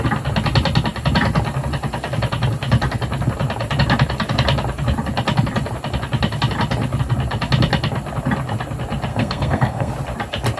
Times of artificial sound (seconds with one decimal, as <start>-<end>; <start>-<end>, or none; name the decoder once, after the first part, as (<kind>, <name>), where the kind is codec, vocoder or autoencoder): 9.1-9.9 (codec, SNAC)